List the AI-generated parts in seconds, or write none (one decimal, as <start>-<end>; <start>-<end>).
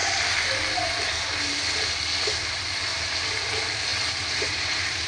2.9-3.5